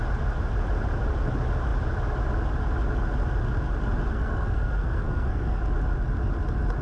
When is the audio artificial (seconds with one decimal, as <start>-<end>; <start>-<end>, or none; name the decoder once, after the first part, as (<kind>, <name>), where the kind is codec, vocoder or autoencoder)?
4.1-5.6 (codec, SNAC)